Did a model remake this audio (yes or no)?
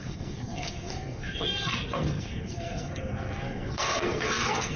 yes